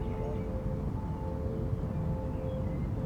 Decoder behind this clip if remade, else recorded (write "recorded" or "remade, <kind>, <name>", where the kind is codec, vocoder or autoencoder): recorded